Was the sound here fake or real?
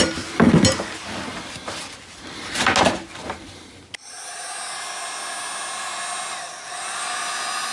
real